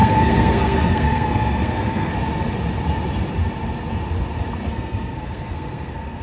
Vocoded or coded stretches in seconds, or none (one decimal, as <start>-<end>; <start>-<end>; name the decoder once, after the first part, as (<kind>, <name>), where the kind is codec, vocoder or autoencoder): 0.0-2.1 (codec, SNAC); 4.7-6.2